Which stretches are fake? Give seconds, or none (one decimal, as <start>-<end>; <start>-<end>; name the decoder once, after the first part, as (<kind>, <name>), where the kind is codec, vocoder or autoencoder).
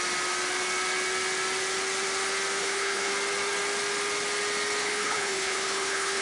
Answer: 2.6-3.1 (codec, HILCodec); 4.8-6.2